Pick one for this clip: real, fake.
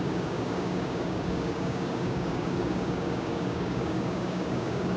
fake